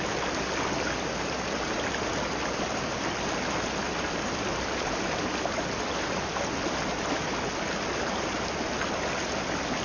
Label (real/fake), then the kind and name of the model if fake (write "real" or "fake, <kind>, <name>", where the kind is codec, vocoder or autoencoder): real